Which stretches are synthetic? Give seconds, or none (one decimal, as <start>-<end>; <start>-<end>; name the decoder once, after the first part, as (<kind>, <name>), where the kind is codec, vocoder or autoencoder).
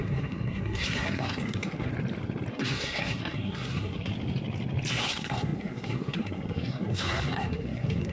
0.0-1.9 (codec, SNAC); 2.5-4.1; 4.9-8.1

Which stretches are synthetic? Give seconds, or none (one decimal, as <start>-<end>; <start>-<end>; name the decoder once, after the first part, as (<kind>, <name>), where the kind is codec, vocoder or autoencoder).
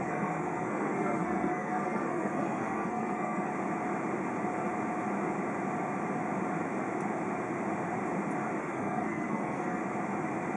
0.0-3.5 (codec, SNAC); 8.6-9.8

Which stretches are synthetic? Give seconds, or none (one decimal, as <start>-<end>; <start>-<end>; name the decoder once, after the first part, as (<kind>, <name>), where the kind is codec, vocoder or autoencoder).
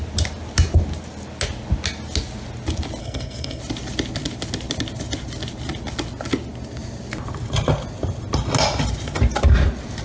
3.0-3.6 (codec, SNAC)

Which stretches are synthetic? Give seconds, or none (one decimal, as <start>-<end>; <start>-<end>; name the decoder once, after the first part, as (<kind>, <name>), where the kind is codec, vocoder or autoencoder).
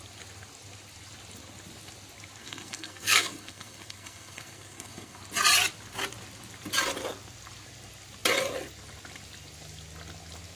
2.4-5.2 (codec, SNAC)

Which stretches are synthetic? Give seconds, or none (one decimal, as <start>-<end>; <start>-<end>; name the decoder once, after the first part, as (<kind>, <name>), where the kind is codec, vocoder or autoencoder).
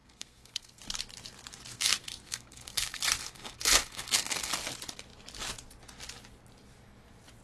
0.0-0.8 (codec, SNAC); 1.7-4.5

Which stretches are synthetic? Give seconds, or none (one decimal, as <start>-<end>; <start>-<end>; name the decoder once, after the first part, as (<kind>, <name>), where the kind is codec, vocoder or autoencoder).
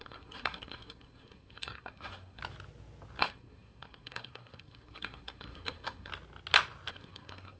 0.0-2.4 (codec, SNAC); 3.2-6.1; 6.9-7.6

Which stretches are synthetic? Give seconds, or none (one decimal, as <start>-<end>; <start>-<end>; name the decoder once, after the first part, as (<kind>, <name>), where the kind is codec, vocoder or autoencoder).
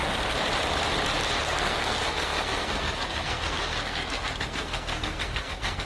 1.4-5.9 (codec, SNAC)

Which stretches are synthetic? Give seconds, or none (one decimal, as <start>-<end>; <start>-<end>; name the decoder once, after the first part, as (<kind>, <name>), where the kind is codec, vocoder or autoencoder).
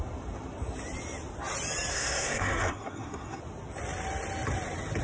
1.9-3.4 (codec, SNAC)